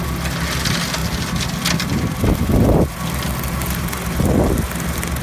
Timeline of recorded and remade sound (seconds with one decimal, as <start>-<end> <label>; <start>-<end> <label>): 0.0-5.2 recorded

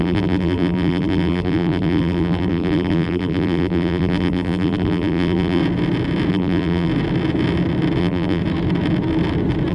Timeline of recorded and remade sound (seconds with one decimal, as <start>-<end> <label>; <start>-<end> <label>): 0.0-5.6 remade; 5.6-6.3 recorded; 6.3-6.9 remade; 6.9-8.0 recorded; 8.0-8.4 remade; 8.4-9.7 recorded

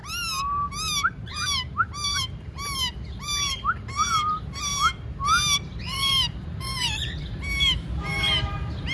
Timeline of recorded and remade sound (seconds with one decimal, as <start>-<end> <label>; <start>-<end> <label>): 0.0-1.3 recorded; 1.3-4.7 remade; 4.7-5.8 recorded; 5.8-8.9 remade